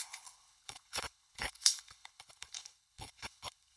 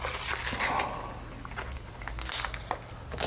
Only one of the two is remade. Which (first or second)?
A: first